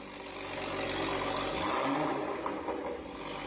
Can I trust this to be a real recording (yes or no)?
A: yes